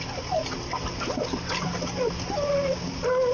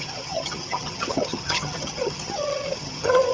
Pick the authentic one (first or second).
first